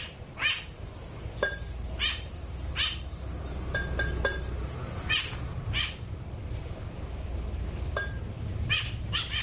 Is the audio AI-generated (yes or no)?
yes